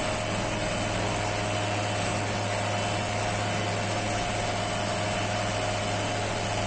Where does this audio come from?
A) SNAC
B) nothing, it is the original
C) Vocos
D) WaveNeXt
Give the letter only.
B